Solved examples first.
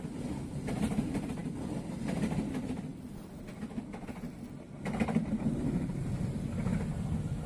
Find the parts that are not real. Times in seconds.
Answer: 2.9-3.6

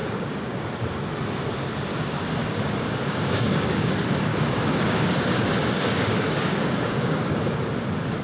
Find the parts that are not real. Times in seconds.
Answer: 0.0-0.6; 1.9-3.9; 4.3-7.4

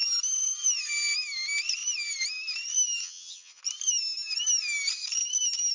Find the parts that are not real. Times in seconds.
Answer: 3.0-3.6

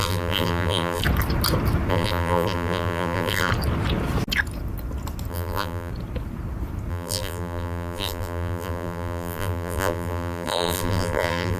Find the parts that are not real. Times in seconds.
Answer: 0.0-1.0; 1.9-3.5; 5.3-5.9; 6.9-11.6

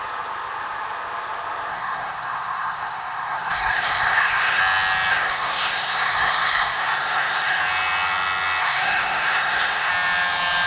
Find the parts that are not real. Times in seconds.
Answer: 1.7-4.6; 5.1-7.6; 8.6-9.9

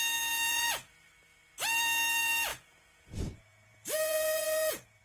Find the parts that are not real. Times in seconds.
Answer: 0.5-1.1; 2.5-5.0